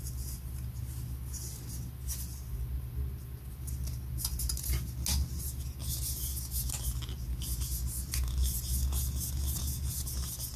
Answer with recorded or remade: recorded